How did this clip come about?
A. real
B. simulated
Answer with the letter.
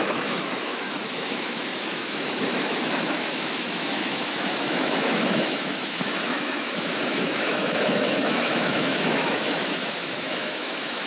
B